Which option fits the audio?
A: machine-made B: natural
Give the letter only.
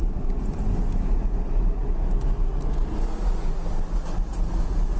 B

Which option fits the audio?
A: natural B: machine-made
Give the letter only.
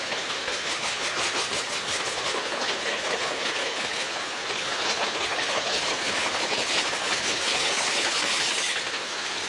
B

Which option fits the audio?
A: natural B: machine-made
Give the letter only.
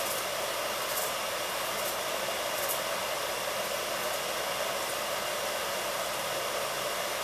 A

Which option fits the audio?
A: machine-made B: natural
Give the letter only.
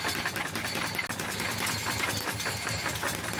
B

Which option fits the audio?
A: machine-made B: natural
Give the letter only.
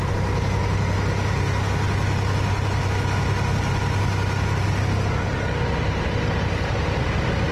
B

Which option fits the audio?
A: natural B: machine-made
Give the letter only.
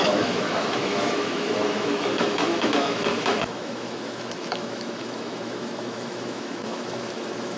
B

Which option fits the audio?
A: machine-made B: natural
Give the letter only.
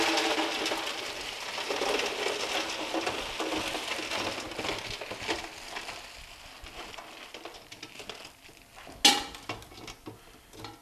B